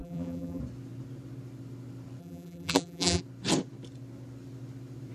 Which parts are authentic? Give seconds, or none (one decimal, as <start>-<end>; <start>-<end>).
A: 0.6-2.2; 3.2-5.1